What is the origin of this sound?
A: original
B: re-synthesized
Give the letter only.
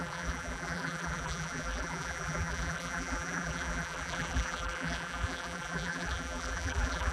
B